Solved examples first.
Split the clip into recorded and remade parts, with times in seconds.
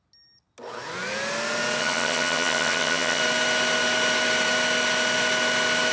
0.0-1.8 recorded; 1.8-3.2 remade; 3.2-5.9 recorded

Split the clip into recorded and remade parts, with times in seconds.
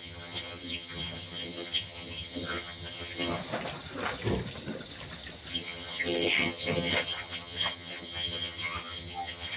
0.0-3.4 remade; 3.4-5.5 recorded; 5.5-9.6 remade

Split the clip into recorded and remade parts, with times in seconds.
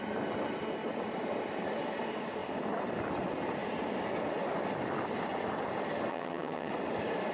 0.0-6.1 recorded; 6.1-6.7 remade; 6.7-7.3 recorded